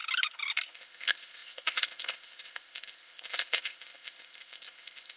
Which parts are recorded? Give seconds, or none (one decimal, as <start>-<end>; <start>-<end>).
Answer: 0.0-0.7